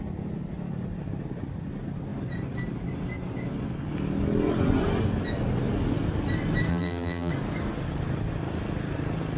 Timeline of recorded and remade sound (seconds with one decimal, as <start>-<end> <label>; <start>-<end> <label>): 0.0-6.7 recorded; 6.7-7.3 remade; 7.3-9.4 recorded